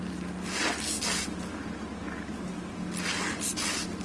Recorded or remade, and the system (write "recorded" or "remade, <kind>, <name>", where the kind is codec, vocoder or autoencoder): recorded